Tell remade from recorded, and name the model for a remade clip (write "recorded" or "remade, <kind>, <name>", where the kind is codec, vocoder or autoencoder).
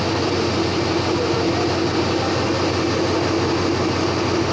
recorded